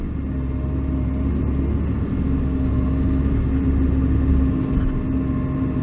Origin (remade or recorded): recorded